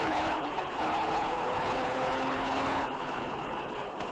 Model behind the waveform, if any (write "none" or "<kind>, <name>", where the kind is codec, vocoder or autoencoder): codec, HILCodec